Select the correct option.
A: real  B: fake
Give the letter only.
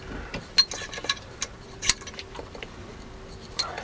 A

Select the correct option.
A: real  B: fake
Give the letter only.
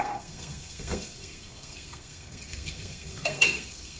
B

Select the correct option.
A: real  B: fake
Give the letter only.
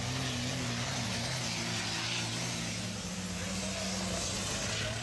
A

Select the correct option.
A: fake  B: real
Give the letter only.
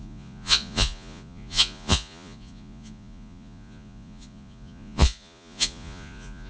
A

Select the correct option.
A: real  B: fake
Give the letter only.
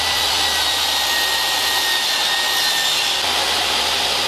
A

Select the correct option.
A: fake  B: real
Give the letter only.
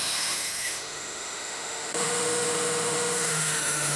A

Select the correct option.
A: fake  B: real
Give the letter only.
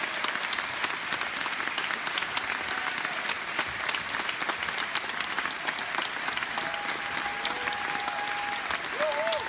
B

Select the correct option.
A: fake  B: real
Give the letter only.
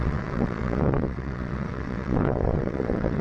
A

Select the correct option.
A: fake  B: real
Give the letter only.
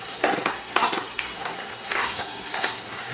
A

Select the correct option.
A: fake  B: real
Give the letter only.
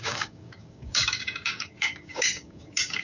A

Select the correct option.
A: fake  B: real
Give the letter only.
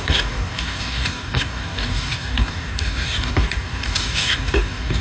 A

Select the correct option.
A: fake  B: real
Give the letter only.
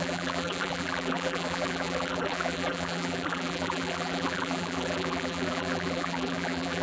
A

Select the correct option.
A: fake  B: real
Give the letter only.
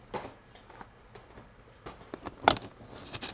B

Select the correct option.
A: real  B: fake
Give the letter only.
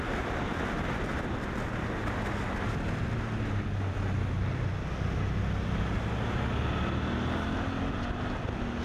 A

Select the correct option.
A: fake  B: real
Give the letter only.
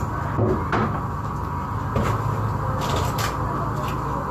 B